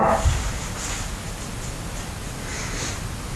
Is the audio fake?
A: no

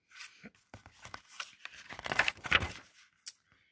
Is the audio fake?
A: no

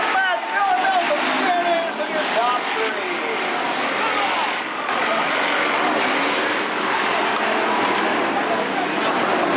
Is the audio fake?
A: no